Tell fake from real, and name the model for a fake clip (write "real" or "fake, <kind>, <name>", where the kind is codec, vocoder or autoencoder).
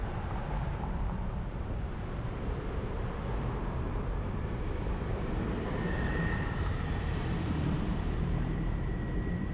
fake, vocoder, BigVGAN v2